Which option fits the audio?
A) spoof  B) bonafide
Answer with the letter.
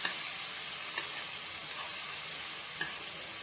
B